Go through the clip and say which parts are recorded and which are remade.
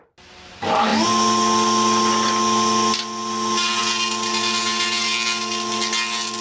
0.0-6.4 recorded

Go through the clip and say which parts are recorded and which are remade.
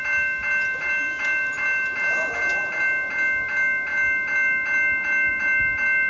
0.0-6.1 recorded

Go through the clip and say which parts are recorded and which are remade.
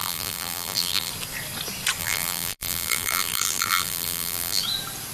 0.0-1.1 remade; 1.1-2.0 recorded; 2.0-4.6 remade; 4.6-5.1 recorded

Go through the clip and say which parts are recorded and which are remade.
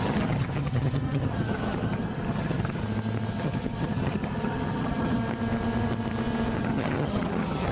0.0-2.8 remade; 2.8-3.3 recorded; 3.3-5.2 remade; 5.2-6.6 recorded; 6.6-7.7 remade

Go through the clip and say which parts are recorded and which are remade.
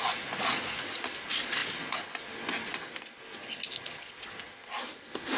0.0-5.4 recorded